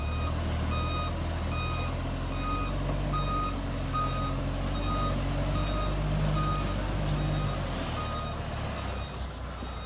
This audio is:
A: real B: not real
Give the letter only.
A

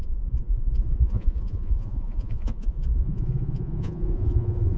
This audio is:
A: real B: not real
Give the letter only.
B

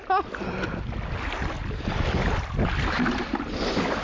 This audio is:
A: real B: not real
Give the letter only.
A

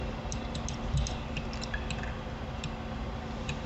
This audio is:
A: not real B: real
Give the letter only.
B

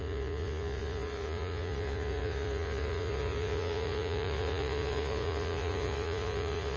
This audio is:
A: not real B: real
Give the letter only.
A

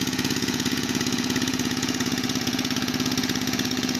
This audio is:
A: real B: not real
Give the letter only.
B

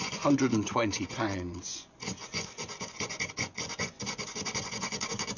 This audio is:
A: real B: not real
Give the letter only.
B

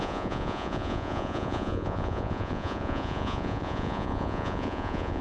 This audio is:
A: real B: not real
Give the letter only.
B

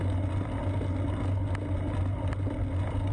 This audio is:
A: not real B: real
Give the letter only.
B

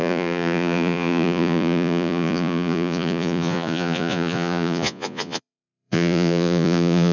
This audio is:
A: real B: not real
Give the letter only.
B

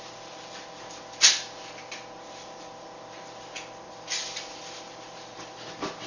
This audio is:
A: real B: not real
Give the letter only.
A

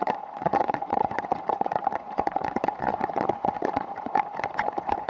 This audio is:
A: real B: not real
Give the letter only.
B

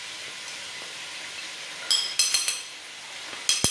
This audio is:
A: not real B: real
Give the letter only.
B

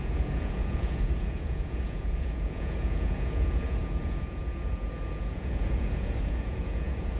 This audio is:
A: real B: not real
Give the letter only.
B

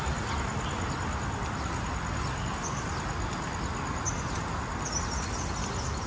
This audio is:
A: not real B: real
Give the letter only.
B